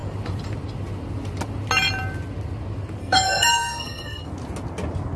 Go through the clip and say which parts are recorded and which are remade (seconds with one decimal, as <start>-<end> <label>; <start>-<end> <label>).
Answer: 0.0-3.0 recorded; 3.0-4.2 remade; 4.2-5.2 recorded